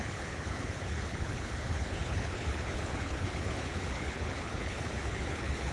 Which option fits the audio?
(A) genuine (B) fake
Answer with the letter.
B